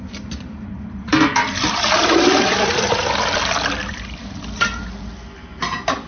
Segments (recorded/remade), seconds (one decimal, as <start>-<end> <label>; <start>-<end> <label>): 0.0-1.1 recorded; 1.1-4.8 remade; 4.8-6.1 recorded